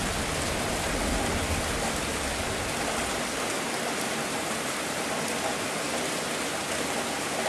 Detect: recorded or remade recorded